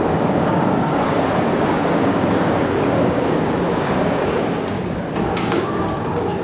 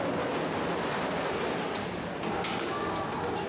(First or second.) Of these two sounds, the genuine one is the second